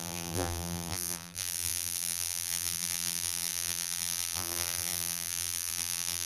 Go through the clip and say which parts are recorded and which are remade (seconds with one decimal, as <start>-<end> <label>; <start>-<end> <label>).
0.0-6.3 remade